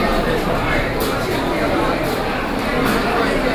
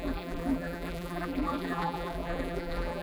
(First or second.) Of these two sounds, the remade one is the second